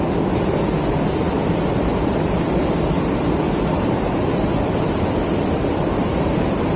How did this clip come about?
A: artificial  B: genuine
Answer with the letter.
B